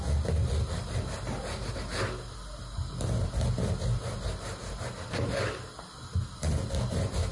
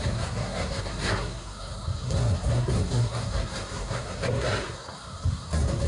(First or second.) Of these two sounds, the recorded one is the first